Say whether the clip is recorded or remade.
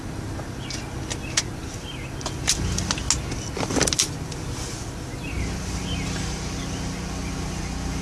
recorded